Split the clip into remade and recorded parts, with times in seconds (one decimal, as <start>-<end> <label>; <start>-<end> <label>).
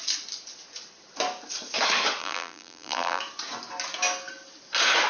0.0-2.2 recorded; 2.2-3.2 remade; 3.2-5.1 recorded